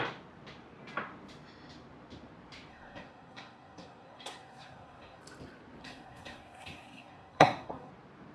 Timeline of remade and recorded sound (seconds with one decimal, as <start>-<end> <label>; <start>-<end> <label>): 0.0-2.7 recorded; 2.7-5.2 remade; 5.2-5.8 recorded; 5.8-7.9 remade; 7.9-8.3 recorded